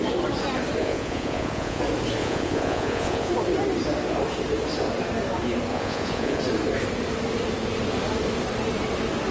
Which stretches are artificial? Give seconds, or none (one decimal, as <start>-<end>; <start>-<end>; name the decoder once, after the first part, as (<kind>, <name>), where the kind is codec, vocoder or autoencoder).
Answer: 0.8-1.8 (vocoder, Vocos); 2.2-3.3; 5.7-6.4